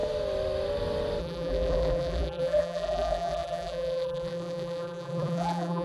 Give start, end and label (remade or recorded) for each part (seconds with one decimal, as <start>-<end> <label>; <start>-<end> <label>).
0.0-1.2 recorded; 1.2-5.8 remade